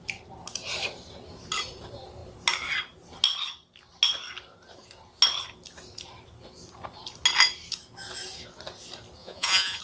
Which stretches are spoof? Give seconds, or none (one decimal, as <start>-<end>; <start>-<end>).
9.2-9.8